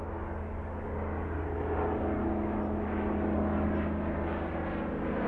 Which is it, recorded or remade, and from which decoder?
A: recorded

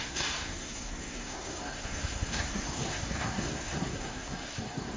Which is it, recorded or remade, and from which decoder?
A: remade, codec, SNAC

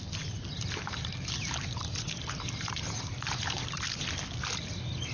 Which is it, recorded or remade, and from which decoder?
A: recorded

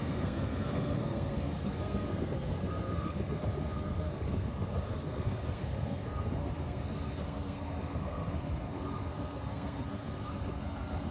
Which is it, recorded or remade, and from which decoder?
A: remade, codec, SNAC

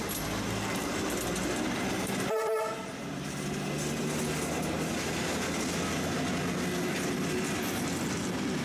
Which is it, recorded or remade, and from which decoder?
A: recorded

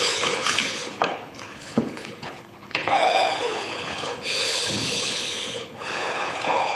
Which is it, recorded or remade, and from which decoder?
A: remade, codec, HILCodec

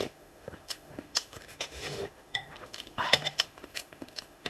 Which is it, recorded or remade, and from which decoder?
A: remade, autoencoder, DAC-VAE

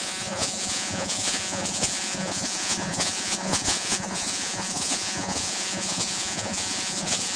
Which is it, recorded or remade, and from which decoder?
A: remade, vocoder, Vocos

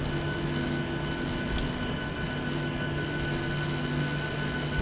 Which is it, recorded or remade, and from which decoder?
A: recorded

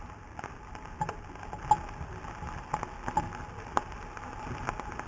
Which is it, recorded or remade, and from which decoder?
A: recorded